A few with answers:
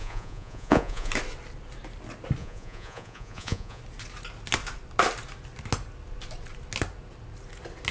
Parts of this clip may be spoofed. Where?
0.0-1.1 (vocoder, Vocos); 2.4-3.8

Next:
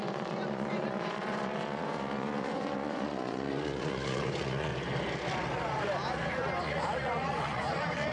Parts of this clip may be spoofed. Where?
0.0-4.7 (vocoder, Vocos); 6.6-8.1